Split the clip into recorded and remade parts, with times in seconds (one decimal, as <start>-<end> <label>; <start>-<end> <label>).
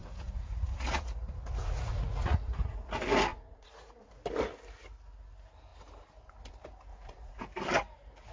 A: 0.0-2.9 remade; 2.9-3.3 recorded; 3.3-4.1 remade; 4.1-6.9 recorded; 6.9-7.4 remade; 7.4-8.3 recorded